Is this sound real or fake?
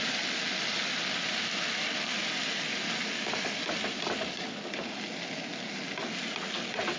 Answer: real